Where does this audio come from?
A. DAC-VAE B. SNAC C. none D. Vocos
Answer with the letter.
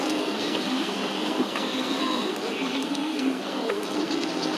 B